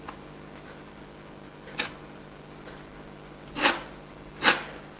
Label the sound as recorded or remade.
recorded